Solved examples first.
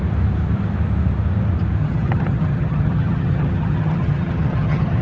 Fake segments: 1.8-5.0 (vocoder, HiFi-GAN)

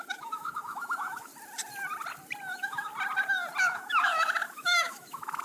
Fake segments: 0.0-1.3 (autoencoder, DAC-VAE); 2.5-2.9; 3.6-5.4

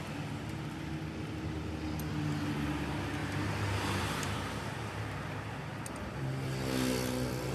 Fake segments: 3.2-6.2 (vocoder, BigVGAN v2)

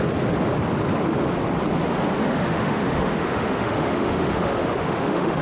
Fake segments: 2.2-5.4 (autoencoder, DAC-VAE)

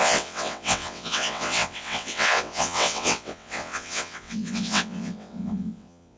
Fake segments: 0.0-6.2 (vocoder, WaveNeXt)

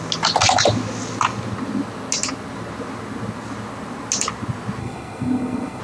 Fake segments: 4.8-5.8 (codec, SNAC)

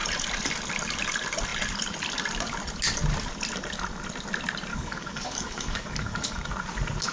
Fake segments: 4.7-6.5 (codec, DAC)

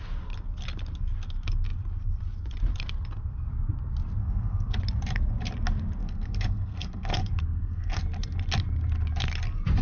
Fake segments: 4.2-4.8 (codec, SNAC); 6.0-8.0